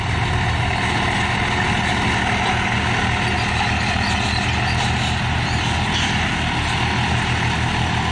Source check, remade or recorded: recorded